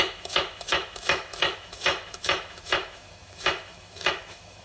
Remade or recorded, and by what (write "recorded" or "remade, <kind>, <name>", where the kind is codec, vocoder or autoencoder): remade, autoencoder, DAC-VAE